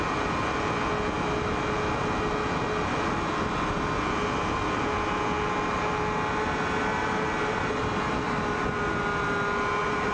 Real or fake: real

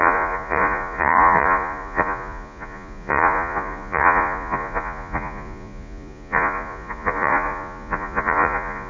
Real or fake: fake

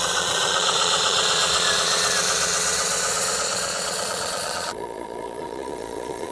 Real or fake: fake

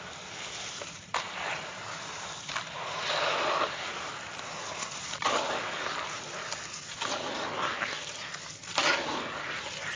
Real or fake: real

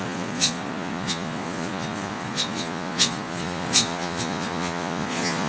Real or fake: fake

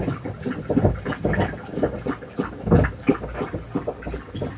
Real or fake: real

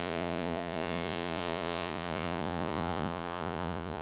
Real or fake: fake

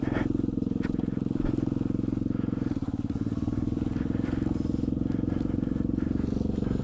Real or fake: real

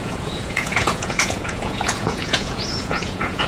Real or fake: fake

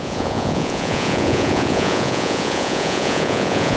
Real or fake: fake